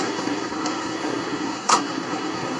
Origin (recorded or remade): remade